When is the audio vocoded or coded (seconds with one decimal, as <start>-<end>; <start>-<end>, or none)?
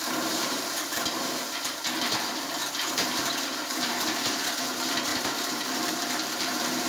0.0-6.9